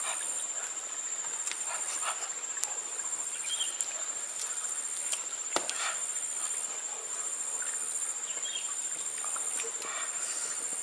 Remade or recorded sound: recorded